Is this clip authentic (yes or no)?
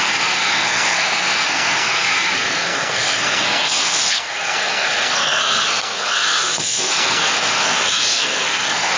no